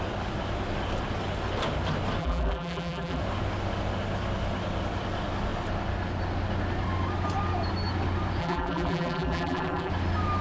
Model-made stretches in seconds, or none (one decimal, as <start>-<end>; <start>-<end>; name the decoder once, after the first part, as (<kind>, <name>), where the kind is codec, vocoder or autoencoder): 2.2-3.2 (vocoder, BigVGAN v2); 8.4-9.9